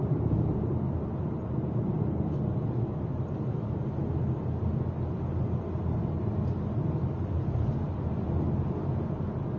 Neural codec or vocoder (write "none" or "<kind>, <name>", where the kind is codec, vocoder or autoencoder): none